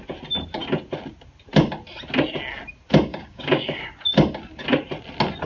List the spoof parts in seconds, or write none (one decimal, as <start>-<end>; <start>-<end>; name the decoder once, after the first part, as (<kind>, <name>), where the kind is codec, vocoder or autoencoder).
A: 3.1-3.8 (codec, DAC)